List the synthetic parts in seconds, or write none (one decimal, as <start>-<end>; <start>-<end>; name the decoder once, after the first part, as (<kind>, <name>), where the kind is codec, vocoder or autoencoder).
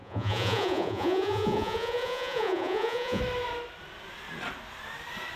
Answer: 0.0-3.2 (vocoder, Vocos)